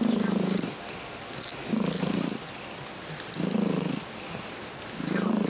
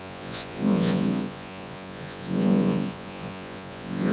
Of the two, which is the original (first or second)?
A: first